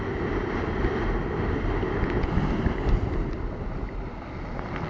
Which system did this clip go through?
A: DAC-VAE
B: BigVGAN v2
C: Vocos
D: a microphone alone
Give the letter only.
D